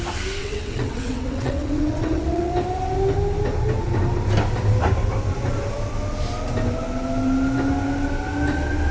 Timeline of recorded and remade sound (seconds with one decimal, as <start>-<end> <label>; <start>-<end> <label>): 0.0-0.4 recorded; 0.4-2.5 remade; 2.5-8.9 recorded